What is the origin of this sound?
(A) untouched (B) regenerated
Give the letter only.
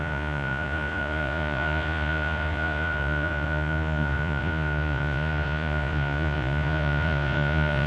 B